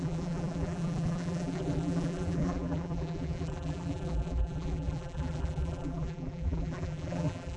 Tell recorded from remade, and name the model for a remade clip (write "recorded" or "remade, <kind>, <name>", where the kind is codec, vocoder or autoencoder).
remade, vocoder, BigVGAN v2